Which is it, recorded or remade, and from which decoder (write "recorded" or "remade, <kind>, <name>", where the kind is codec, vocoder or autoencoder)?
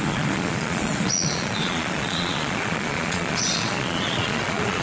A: remade, vocoder, Vocos